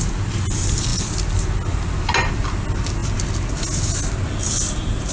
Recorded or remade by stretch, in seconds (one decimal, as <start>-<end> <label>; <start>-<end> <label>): 0.0-5.1 recorded